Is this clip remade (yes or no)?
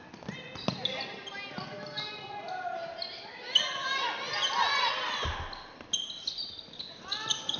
no